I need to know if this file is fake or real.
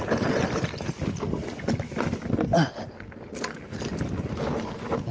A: real